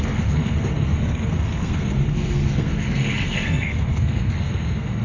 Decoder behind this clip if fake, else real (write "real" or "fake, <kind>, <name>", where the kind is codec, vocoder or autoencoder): fake, codec, SNAC